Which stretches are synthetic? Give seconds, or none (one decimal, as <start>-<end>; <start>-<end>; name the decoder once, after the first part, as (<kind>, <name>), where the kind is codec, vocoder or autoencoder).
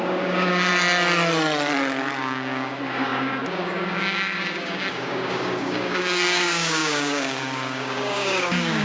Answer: 0.0-0.7 (codec, DAC); 2.2-8.8